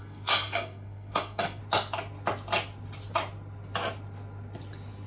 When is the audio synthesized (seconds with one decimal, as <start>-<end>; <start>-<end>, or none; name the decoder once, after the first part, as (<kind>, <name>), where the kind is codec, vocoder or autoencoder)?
0.0-1.6 (codec, SNAC)